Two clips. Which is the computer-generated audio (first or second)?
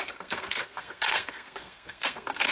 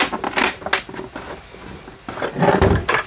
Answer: first